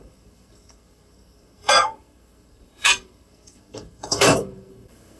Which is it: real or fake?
fake